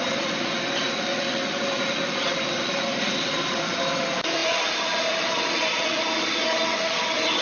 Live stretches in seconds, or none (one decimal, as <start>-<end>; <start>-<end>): 0.0-7.4